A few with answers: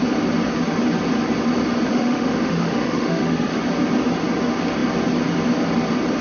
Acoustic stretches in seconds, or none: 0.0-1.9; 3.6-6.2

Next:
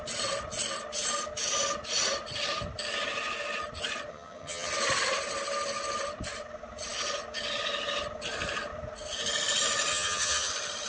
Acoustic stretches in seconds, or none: 0.0-4.1; 4.7-9.9; 10.5-10.9

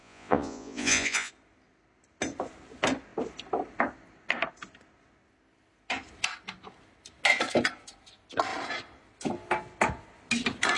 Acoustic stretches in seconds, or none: 1.3-10.8